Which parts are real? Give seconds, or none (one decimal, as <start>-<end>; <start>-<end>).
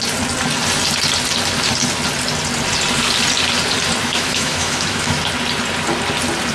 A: 0.0-4.1; 5.2-6.5